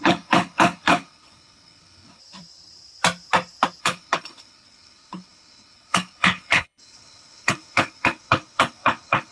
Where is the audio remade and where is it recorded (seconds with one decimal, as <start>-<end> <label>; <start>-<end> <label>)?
0.0-2.2 remade; 2.2-3.8 recorded; 3.8-9.3 remade